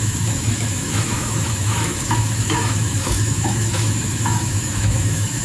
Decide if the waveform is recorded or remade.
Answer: remade